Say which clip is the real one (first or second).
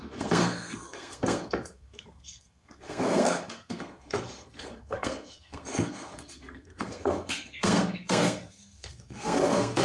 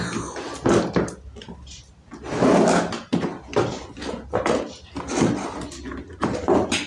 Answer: second